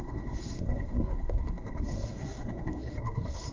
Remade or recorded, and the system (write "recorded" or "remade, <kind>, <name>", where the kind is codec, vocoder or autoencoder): remade, codec, SNAC